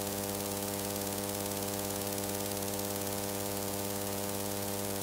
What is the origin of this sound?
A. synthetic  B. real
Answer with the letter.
A